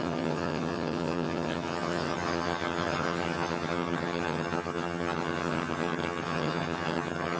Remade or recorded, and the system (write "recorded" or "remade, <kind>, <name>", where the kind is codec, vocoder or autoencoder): remade, vocoder, HiFi-GAN